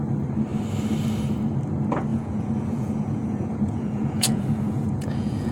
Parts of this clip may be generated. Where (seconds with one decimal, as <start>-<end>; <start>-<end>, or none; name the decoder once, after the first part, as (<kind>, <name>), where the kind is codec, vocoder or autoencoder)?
2.1-5.5 (vocoder, Vocos)